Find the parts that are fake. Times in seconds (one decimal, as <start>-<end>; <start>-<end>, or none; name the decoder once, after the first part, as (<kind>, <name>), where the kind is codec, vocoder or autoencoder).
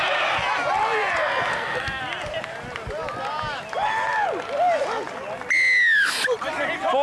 1.5-2.0 (codec, SNAC)